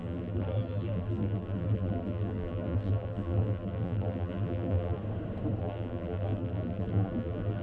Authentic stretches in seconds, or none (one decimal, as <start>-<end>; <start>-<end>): 5.0-5.6